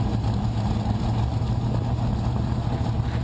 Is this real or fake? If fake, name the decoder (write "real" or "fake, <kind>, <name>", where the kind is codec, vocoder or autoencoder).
real